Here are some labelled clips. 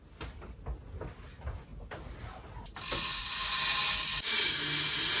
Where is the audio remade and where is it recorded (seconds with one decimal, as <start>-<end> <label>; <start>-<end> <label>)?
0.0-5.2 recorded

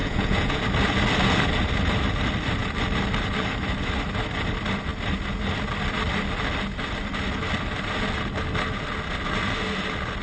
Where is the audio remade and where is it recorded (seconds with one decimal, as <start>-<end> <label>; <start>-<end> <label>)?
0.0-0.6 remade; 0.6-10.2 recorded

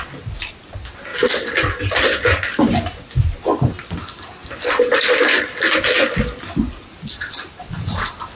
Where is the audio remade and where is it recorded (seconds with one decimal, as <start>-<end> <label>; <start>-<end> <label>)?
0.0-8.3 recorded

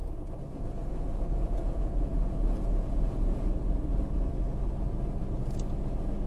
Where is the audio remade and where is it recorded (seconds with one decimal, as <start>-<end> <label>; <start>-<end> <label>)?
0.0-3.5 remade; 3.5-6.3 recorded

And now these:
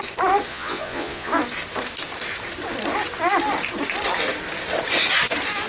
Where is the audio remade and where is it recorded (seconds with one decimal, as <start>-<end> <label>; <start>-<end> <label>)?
0.0-0.5 recorded; 0.5-1.3 remade; 1.3-5.7 recorded

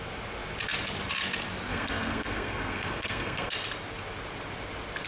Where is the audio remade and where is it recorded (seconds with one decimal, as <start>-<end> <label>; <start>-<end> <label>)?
0.0-1.7 recorded; 1.7-3.5 remade; 3.5-5.1 recorded

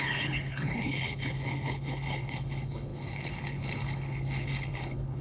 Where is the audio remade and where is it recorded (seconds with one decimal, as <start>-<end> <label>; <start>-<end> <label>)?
0.0-5.2 remade